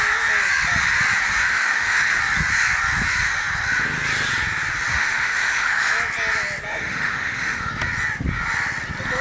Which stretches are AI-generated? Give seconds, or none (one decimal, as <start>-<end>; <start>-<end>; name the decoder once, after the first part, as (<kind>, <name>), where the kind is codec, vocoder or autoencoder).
1.5-2.2 (autoencoder, DAC-VAE); 4.9-5.9; 6.7-7.7